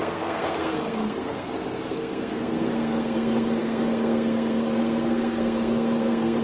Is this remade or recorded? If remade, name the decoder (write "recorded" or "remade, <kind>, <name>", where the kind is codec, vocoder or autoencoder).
remade, codec, SNAC